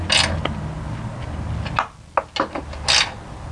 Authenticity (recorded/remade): recorded